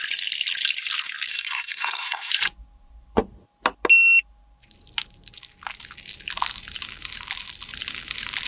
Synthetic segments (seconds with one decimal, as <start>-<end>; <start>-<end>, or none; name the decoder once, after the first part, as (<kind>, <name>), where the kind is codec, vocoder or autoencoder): 1.3-2.3 (codec, SNAC)